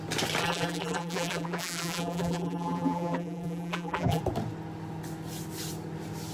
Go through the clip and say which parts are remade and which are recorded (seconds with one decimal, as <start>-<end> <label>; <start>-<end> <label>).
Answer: 0.0-0.4 recorded; 0.4-4.2 remade; 4.2-6.3 recorded